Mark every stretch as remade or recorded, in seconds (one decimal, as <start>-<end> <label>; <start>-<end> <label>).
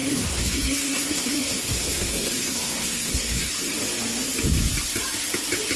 0.0-3.5 remade; 3.5-5.8 recorded